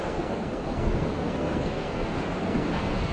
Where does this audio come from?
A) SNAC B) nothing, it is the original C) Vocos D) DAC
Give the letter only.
A